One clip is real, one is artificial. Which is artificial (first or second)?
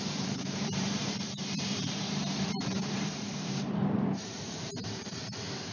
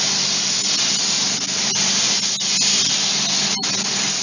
first